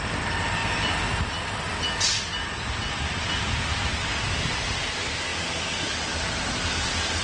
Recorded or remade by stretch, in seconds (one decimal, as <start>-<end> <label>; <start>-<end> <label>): 0.0-7.2 recorded